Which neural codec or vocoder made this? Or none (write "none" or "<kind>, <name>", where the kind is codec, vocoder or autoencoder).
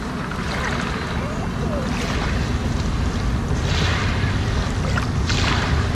none